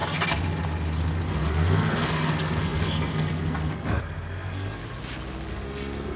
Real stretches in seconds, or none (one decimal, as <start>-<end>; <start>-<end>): 0.0-1.3; 4.8-5.5